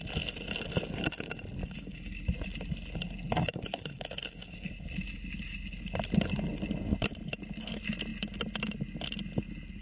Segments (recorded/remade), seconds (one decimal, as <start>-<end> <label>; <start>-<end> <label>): 0.0-1.6 recorded; 1.6-2.2 remade; 2.2-3.4 recorded; 3.4-4.7 remade; 4.7-9.8 recorded